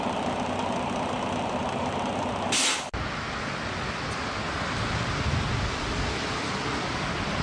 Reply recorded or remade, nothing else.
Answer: recorded